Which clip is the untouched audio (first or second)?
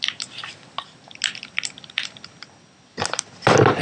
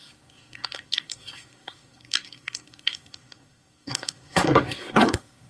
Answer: first